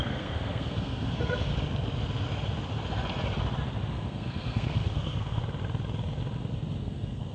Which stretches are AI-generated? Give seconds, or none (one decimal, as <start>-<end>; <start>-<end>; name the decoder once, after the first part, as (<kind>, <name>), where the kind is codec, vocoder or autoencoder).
0.0-1.5 (codec, SNAC); 3.9-5.4; 6.8-7.3